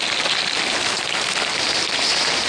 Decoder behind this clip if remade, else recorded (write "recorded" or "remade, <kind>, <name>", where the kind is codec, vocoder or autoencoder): recorded